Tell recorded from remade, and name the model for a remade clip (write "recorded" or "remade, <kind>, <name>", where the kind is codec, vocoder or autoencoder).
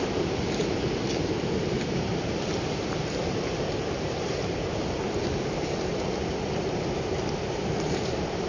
remade, vocoder, BigVGAN v2